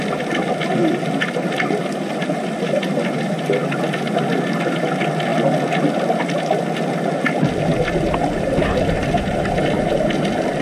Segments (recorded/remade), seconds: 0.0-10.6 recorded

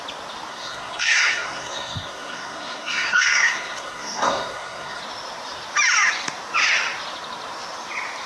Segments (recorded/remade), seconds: 0.0-0.5 recorded; 0.5-5.0 remade; 5.0-8.3 recorded